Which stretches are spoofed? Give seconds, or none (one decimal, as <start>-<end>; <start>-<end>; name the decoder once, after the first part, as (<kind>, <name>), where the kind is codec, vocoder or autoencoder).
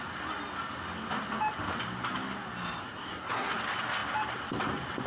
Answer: 2.8-3.5 (codec, SNAC)